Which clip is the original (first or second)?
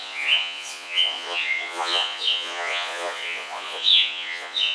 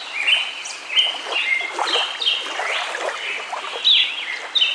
second